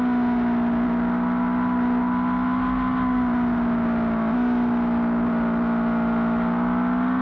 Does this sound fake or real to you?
real